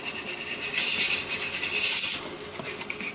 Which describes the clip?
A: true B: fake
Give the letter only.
A